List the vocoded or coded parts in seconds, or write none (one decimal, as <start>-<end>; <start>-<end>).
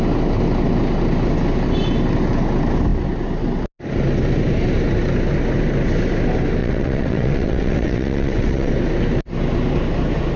6.6-8.7